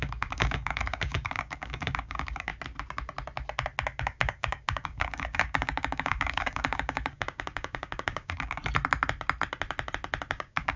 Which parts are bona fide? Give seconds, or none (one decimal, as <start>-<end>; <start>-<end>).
2.5-4.0; 8.6-10.3